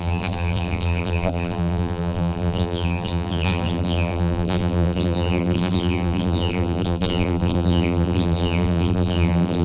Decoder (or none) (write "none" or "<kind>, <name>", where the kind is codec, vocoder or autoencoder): vocoder, BigVGAN v2